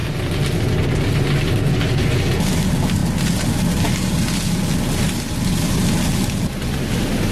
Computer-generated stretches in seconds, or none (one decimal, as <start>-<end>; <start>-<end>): none